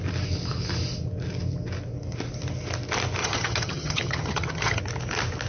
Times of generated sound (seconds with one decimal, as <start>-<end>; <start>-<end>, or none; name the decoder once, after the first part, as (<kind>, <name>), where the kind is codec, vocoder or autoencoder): 3.2-4.8 (vocoder, HiFi-GAN)